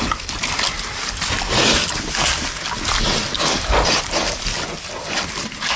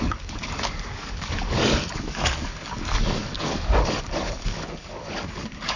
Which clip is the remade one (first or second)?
second